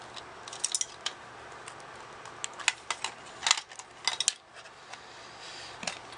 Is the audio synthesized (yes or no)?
no